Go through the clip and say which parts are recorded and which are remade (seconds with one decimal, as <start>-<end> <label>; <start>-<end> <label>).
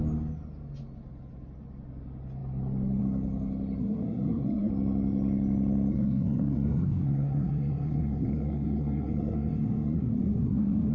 0.0-3.8 recorded; 3.8-4.7 remade; 4.7-5.9 recorded; 5.9-10.9 remade